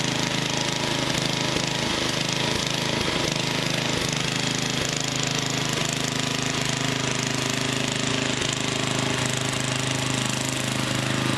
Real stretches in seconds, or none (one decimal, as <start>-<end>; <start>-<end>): 0.0-11.4